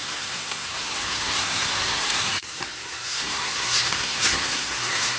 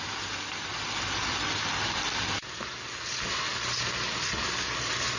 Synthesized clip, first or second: first